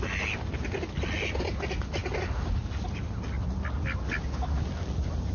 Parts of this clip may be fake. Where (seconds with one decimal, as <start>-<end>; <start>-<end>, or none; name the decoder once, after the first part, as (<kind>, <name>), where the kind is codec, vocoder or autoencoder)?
none